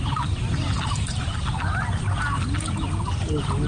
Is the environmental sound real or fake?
real